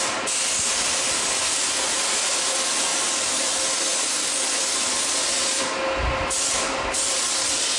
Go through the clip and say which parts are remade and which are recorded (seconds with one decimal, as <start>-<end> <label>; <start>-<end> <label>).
0.0-7.8 recorded

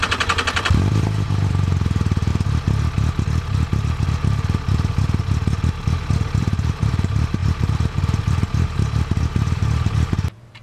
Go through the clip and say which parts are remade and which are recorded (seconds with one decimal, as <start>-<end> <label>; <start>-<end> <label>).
0.0-2.3 remade; 2.3-6.4 recorded; 6.4-10.6 remade